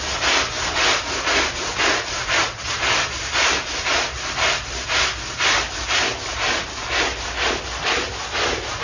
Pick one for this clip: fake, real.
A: real